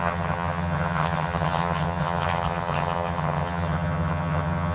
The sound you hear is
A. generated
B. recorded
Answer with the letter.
A